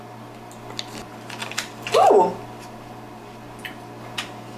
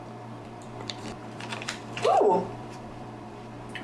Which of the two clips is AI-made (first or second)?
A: second